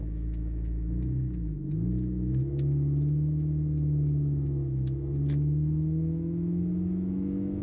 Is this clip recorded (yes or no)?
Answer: no